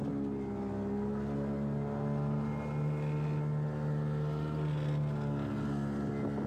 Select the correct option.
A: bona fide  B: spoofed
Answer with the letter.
A